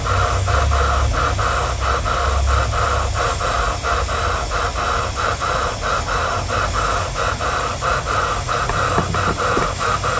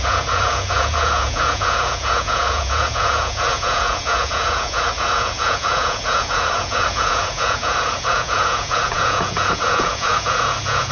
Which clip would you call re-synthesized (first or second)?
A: second